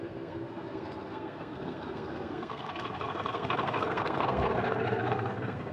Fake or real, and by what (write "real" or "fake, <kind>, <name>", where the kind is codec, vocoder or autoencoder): fake, codec, SNAC